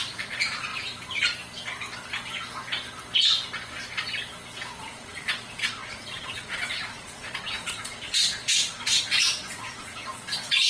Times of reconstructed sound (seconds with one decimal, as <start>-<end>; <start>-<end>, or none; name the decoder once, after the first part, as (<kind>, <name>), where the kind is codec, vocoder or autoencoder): 0.0-0.7 (vocoder, Vocos); 4.8-10.7